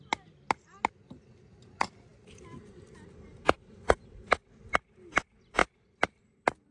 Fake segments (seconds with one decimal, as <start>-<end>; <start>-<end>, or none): 2.1-4.7; 5.6-6.2